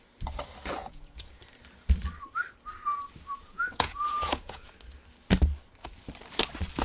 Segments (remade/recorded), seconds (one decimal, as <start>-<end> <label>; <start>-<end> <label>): 0.0-0.8 recorded; 0.8-1.4 remade; 1.4-3.4 recorded; 3.4-4.7 remade; 4.7-6.8 recorded